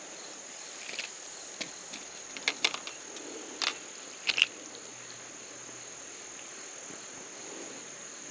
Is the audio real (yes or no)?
yes